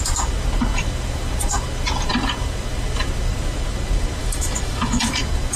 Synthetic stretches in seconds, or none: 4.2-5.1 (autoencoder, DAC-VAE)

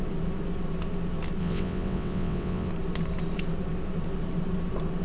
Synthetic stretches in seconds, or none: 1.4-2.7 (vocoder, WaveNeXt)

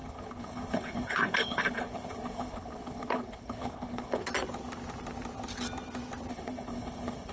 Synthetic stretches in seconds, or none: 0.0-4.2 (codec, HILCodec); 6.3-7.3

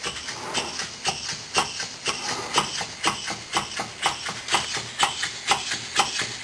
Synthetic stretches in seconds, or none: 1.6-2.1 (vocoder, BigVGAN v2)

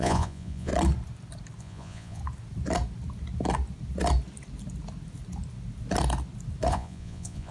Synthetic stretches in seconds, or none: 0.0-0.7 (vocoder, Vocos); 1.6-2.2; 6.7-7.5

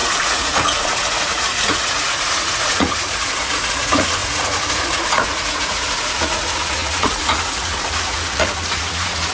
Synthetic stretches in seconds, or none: 0.0-9.3 (vocoder, Vocos)